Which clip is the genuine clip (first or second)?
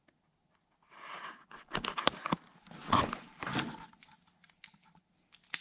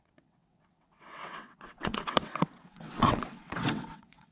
first